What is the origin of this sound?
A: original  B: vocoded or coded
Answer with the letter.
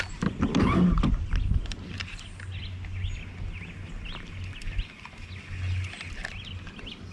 A